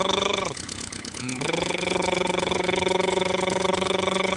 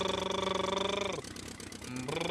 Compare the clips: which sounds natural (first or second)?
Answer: second